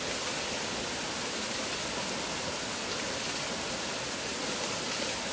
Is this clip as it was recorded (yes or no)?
yes